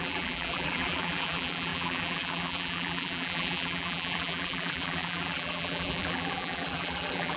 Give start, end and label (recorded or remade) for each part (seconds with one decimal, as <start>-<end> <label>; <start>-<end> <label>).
0.0-7.4 remade